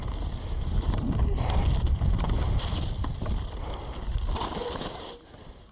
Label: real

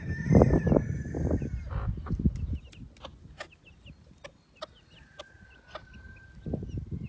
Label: real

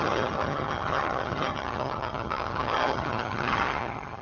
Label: fake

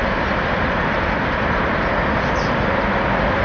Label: real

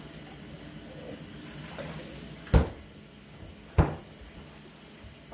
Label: real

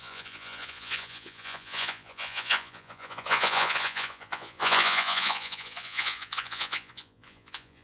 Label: fake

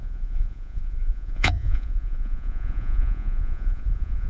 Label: fake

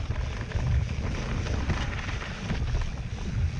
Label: real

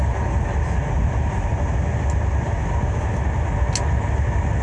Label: real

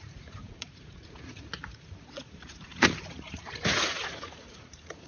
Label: fake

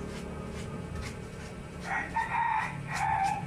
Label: real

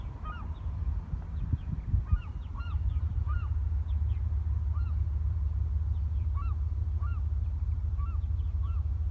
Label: real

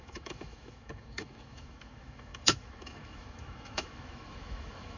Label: fake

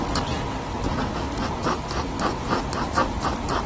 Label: real